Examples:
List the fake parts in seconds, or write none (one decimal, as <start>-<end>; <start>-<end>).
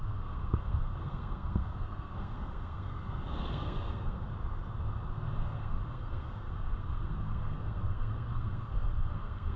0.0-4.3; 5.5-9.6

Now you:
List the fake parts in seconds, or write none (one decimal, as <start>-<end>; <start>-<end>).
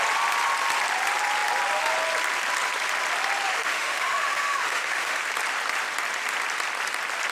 3.5-5.2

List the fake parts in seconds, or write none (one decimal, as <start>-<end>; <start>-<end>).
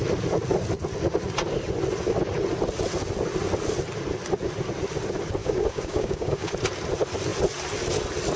5.4-6.5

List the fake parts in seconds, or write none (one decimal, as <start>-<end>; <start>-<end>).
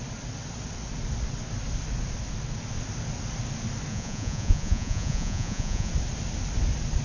3.9-5.9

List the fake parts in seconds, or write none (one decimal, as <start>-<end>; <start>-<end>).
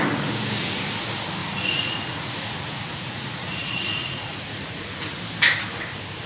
1.4-5.2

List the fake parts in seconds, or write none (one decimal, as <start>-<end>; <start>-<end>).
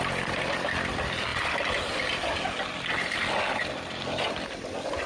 none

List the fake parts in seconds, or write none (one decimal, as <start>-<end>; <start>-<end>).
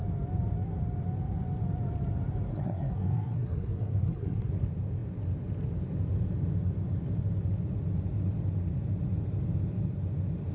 2.5-4.5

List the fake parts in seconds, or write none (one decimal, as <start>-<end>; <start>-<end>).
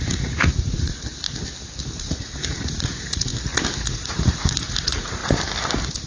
0.0-1.1; 1.8-3.3; 3.9-5.2